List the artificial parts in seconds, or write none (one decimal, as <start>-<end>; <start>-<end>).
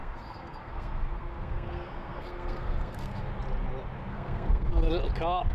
0.0-3.3; 4.1-4.7